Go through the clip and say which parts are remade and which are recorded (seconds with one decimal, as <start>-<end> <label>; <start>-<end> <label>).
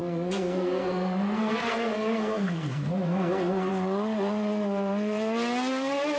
0.0-3.7 remade; 3.7-6.2 recorded